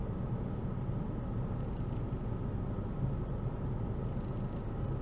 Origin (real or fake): real